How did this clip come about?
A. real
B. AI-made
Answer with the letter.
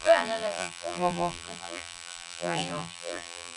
B